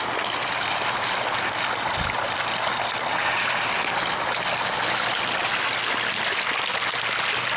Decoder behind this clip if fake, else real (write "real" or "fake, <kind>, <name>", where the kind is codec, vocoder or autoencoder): real